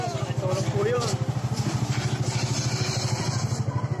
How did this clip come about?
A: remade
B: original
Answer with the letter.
A